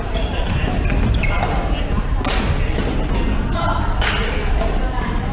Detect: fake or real real